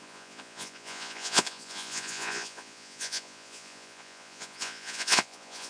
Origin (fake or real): fake